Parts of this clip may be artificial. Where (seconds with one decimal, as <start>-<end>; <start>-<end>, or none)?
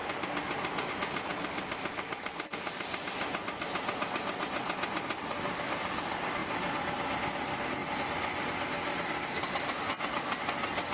none